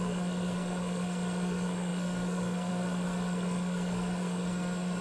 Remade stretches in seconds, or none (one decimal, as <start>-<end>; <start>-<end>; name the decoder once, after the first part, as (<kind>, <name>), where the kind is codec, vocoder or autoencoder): 0.0-5.0 (codec, SNAC)